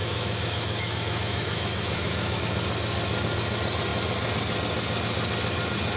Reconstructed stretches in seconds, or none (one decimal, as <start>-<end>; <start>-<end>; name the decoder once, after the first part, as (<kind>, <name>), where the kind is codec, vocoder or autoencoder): 0.0-2.4 (autoencoder, DAC-VAE)